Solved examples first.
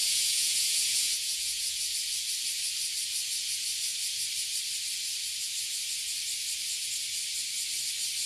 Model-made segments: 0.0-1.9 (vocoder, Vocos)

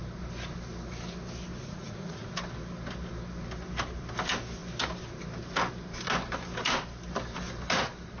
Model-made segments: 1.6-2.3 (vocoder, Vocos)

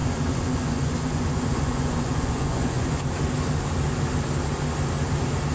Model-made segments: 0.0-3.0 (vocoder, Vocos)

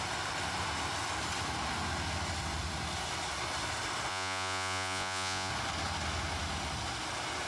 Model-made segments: 4.1-5.5 (vocoder, Vocos)

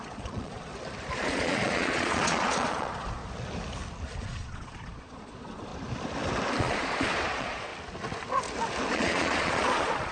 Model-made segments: 0.0-0.7 (vocoder, Vocos); 1.2-3.2; 4.2-5.7; 6.6-7.7; 8.9-10.1